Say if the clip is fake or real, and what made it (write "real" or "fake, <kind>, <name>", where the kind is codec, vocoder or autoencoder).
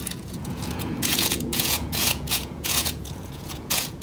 fake, vocoder, Vocos